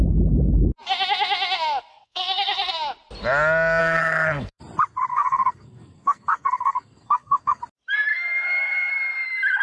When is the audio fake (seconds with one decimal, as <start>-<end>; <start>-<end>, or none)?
1.9-2.7; 3.8-4.6; 5.1-7.6; 8.1-8.9